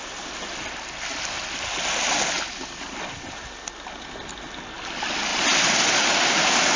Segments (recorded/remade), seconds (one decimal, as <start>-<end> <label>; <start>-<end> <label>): 0.0-6.8 recorded